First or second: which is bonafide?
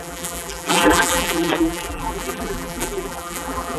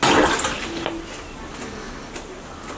second